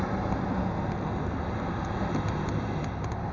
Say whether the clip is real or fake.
real